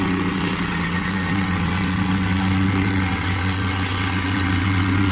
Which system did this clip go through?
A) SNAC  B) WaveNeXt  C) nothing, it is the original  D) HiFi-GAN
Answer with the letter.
B